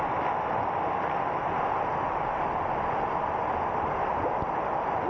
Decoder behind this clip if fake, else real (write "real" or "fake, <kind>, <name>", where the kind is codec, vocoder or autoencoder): real